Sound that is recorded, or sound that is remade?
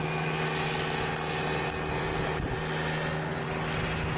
recorded